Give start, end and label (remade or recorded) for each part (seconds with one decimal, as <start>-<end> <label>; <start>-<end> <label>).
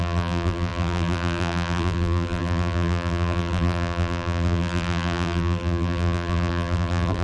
0.0-7.2 remade